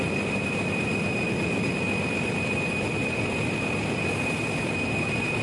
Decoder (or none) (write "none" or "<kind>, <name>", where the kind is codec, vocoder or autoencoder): none